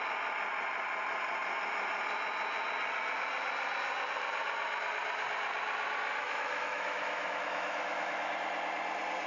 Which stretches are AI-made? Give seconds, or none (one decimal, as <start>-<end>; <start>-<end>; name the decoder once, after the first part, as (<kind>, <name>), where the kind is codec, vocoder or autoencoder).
6.2-8.3 (autoencoder, DAC-VAE)